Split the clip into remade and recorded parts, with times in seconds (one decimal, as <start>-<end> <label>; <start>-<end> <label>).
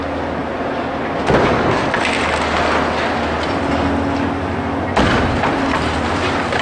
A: 0.0-6.6 recorded